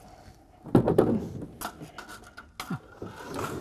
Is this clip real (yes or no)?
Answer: yes